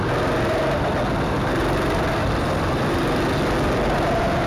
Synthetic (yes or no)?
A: no